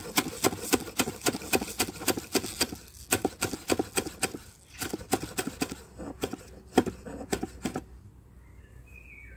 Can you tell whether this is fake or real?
real